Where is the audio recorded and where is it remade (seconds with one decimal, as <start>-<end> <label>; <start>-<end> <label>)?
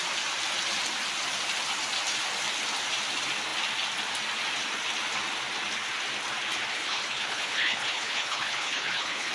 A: 0.0-6.7 recorded; 6.7-9.3 remade